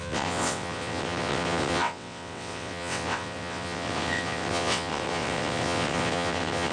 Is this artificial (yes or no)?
yes